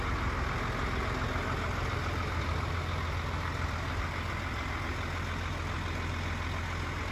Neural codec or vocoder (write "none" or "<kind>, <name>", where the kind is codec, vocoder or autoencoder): none